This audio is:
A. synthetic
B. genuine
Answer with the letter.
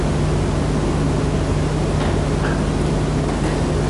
B